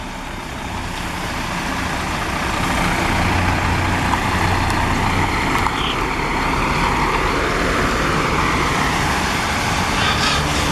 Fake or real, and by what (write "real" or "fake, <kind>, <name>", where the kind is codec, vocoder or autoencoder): real